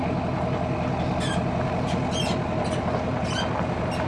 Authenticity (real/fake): real